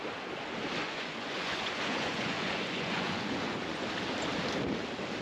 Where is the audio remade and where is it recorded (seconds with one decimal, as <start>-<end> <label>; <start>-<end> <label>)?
0.0-0.8 recorded; 0.8-3.9 remade; 3.9-5.2 recorded